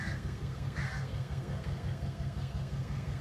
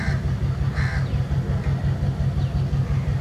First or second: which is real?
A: second